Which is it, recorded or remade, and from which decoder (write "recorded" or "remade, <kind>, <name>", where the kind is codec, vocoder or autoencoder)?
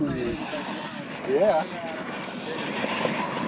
recorded